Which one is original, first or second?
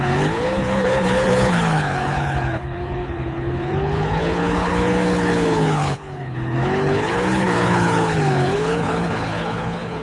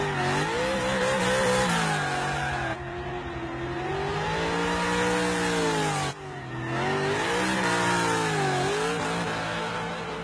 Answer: second